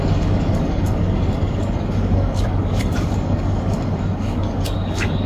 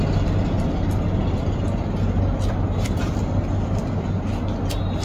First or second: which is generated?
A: first